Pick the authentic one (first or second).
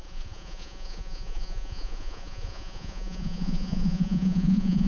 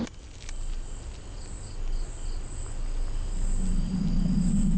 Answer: second